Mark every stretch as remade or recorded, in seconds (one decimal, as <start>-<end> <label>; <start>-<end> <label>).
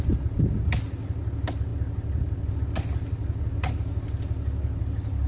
0.0-5.3 recorded